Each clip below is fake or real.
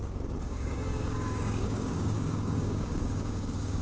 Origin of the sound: fake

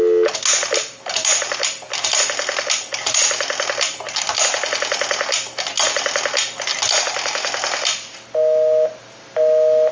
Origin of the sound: real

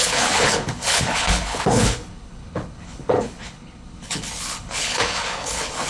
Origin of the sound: fake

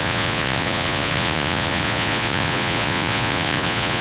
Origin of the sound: fake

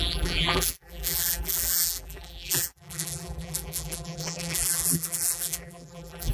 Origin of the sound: fake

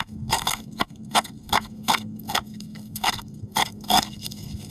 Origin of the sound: fake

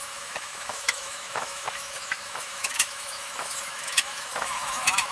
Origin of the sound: fake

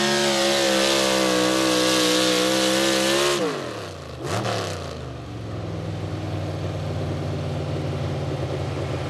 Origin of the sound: real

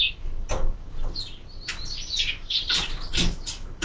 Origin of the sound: real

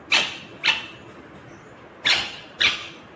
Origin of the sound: real